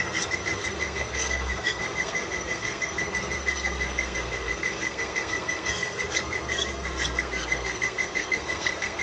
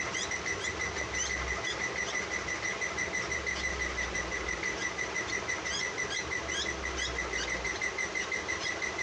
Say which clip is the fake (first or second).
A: first